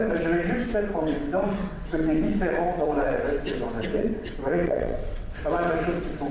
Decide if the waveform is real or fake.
fake